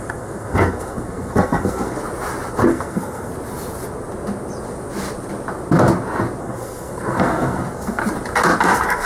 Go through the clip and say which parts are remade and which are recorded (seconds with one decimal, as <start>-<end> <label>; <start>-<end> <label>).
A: 0.0-2.0 remade; 2.0-2.6 recorded; 2.6-3.3 remade; 3.3-6.4 recorded; 6.4-8.0 remade; 8.0-8.6 recorded; 8.6-9.1 remade